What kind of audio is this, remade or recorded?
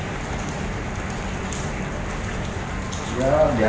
recorded